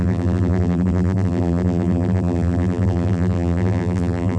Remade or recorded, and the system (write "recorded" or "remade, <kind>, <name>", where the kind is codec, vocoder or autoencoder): remade, vocoder, BigVGAN v2